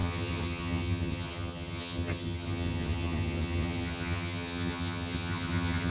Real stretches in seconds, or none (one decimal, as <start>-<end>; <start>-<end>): none

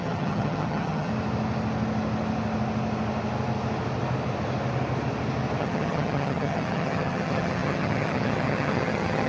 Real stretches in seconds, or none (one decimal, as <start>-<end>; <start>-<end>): 1.1-5.6

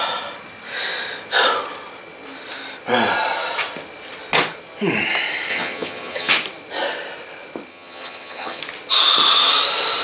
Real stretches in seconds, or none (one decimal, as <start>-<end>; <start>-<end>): 0.0-5.5; 6.3-7.7; 8.6-10.0

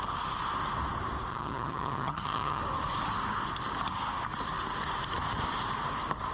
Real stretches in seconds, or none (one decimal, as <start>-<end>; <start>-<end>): 0.0-1.3; 2.6-6.3

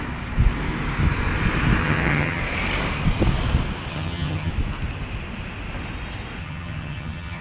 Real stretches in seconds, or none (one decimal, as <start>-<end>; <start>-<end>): 0.0-1.8; 2.4-3.9; 4.5-6.4

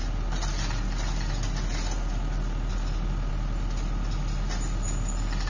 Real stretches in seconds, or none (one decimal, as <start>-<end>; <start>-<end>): 0.0-5.5